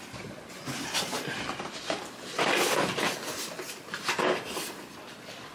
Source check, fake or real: real